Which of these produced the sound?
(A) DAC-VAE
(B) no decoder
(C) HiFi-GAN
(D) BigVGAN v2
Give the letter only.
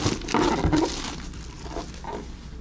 B